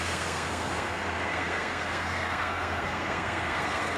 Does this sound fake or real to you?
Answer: fake